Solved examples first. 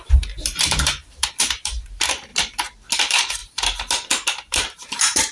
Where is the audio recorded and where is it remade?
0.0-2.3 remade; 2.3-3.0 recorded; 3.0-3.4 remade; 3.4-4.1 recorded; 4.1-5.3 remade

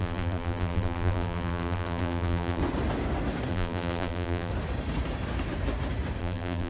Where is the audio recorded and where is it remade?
0.0-2.6 remade; 2.6-3.5 recorded; 3.5-4.5 remade; 4.5-6.2 recorded; 6.2-6.7 remade

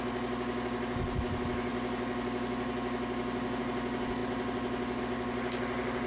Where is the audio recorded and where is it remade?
0.0-6.1 recorded